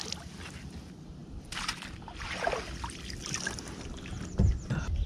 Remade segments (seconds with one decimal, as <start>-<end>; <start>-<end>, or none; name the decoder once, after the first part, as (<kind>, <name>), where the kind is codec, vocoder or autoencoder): none